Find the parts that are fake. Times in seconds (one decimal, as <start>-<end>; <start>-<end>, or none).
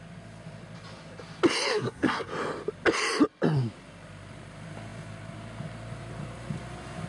1.7-2.3